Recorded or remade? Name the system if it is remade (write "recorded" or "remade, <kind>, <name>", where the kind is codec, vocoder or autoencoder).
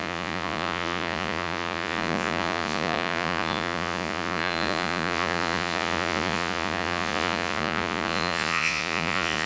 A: remade, vocoder, Vocos